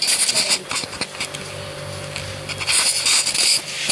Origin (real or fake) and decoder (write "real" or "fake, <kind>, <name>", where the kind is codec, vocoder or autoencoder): real